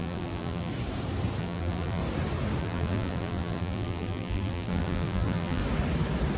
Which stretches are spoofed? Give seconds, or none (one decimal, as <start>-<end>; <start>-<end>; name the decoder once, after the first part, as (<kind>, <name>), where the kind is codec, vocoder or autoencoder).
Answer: 0.0-0.7 (vocoder, BigVGAN v2); 1.4-2.0; 2.6-5.6